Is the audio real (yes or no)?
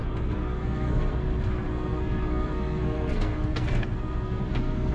no